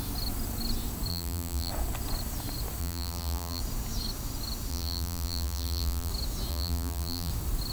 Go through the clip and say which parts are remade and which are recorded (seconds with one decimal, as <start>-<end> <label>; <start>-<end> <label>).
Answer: 0.0-1.1 recorded; 1.1-1.7 remade; 1.7-2.8 recorded; 2.8-3.6 remade; 3.6-4.7 recorded; 4.7-6.1 remade; 6.1-6.5 recorded; 6.5-7.3 remade; 7.3-7.7 recorded